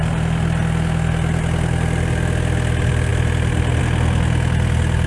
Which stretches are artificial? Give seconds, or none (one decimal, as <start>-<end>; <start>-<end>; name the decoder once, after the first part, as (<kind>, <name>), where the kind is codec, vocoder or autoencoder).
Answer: none